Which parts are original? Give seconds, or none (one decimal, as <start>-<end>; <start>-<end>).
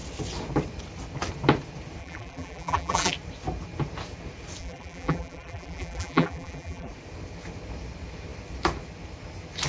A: 0.0-2.0; 3.1-4.6; 6.9-9.7